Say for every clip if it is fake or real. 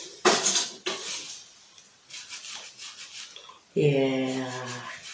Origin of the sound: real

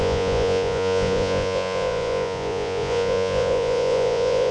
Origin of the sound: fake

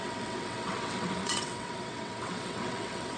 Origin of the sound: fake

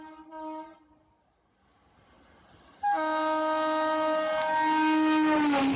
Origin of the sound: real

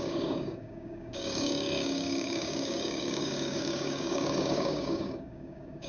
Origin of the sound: fake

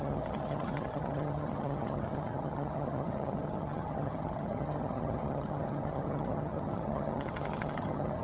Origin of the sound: fake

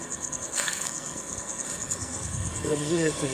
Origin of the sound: fake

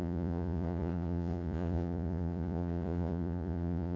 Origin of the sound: fake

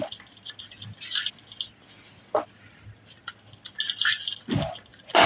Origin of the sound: real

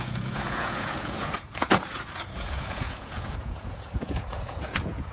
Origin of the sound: fake